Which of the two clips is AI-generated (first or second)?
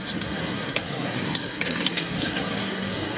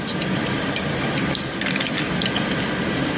first